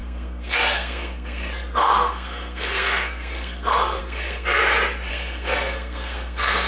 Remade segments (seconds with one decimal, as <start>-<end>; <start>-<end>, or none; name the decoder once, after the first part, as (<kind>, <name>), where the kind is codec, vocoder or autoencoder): 0.0-4.6 (codec, SNAC); 5.1-6.7